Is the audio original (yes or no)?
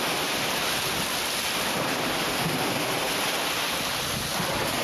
yes